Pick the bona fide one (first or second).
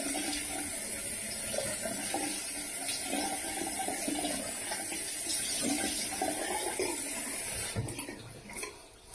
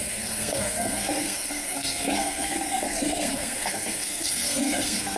first